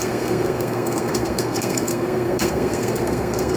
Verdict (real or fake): fake